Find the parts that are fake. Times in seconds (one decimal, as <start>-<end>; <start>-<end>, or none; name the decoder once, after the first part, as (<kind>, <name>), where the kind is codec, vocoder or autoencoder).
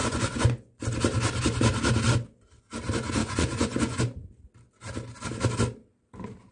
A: 0.0-0.8 (vocoder, Vocos); 3.2-4.0